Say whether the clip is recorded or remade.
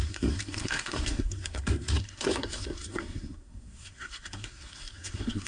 remade